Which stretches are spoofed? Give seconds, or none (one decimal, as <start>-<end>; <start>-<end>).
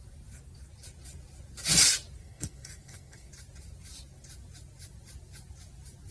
2.2-3.3